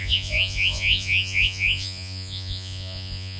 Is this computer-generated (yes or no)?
yes